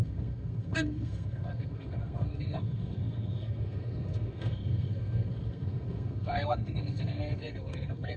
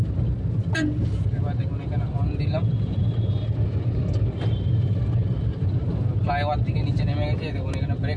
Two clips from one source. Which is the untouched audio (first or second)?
second